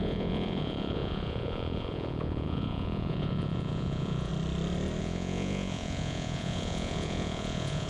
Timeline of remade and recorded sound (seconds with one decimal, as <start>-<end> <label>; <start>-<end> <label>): 0.0-4.3 remade; 4.3-5.0 recorded; 5.0-7.9 remade